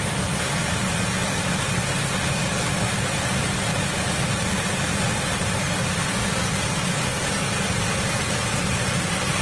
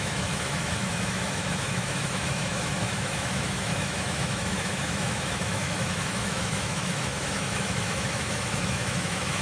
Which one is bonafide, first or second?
first